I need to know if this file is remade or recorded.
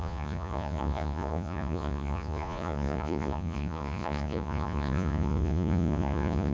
remade